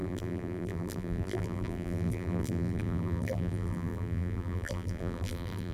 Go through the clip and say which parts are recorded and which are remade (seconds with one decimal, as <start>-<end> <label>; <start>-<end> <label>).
0.0-5.7 remade